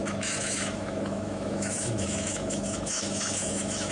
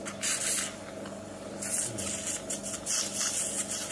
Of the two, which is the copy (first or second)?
first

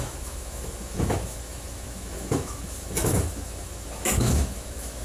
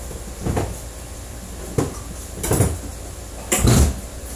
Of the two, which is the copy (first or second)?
first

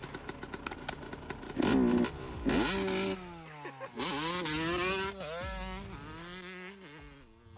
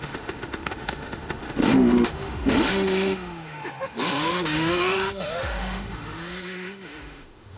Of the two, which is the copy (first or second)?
second